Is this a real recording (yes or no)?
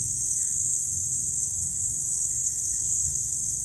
no